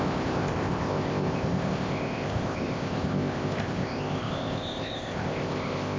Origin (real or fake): fake